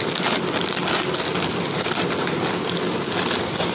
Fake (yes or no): no